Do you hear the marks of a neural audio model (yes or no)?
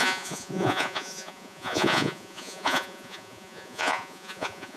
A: yes